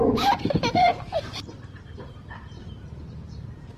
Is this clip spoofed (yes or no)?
yes